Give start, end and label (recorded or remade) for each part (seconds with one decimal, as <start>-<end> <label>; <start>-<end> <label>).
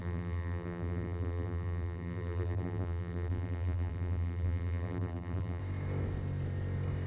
0.0-5.6 remade; 5.6-7.1 recorded